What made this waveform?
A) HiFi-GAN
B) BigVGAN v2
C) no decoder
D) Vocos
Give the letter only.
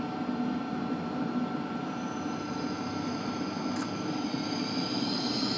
B